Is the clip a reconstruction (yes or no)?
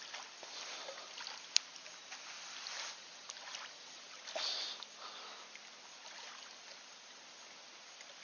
no